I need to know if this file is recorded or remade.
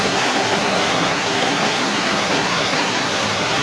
remade